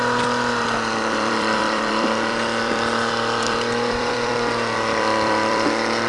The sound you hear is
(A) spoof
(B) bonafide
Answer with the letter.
A